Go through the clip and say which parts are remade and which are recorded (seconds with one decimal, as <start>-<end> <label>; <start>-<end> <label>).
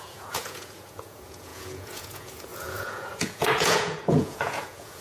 0.0-5.0 remade